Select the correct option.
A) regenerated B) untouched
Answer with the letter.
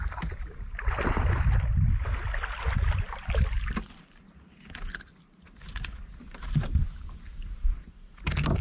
B